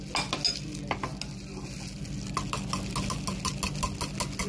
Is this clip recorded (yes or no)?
yes